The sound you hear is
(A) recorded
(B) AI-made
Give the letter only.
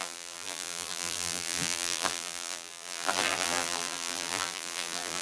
B